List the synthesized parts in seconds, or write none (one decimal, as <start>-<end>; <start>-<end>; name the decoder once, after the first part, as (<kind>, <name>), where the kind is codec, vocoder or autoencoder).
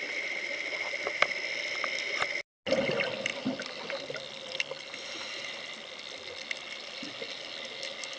3.3-4.1 (vocoder, BigVGAN v2)